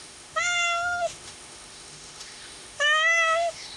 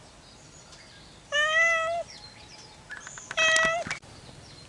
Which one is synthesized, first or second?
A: first